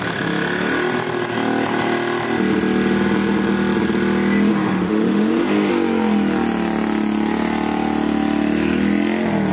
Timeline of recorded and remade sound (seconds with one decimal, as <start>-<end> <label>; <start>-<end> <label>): 0.0-4.5 recorded; 4.5-5.7 remade; 5.7-9.5 recorded